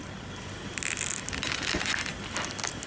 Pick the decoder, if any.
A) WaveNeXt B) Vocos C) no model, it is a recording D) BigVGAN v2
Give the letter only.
C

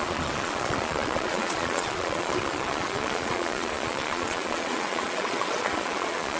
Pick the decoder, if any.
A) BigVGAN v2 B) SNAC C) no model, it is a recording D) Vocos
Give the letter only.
D